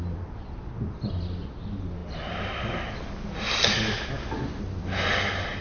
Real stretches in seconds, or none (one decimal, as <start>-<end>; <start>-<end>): 0.0-5.6